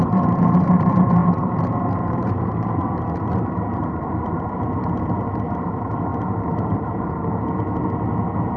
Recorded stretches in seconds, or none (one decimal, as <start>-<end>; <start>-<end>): none

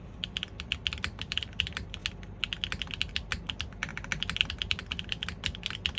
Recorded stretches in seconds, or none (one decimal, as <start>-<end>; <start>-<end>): 2.0-3.1; 3.9-4.5

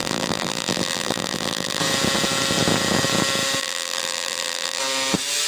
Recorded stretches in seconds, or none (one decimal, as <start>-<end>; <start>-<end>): 1.8-3.6; 4.8-5.5

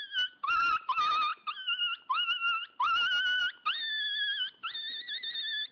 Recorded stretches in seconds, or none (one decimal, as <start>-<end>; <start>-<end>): 0.0-3.4

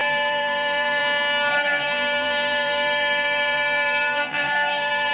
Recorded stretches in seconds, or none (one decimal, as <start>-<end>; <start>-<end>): 1.0-1.7